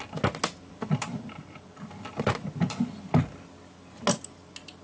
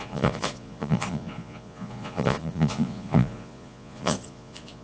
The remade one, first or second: second